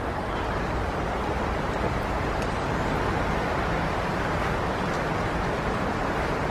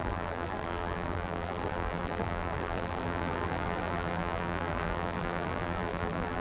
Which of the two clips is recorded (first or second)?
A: first